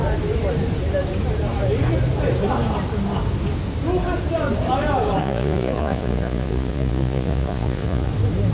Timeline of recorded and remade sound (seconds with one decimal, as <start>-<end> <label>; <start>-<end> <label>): 0.0-5.2 recorded; 5.2-8.1 remade; 8.1-8.5 recorded